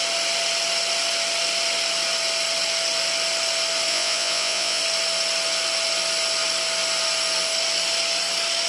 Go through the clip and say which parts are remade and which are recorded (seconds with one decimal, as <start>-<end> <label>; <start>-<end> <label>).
0.0-3.9 recorded; 3.9-4.8 remade; 4.8-8.7 recorded